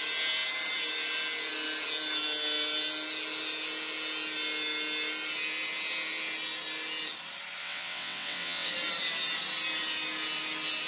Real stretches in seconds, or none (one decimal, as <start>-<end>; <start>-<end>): 0.0-7.6; 8.7-10.9